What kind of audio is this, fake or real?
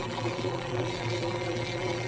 fake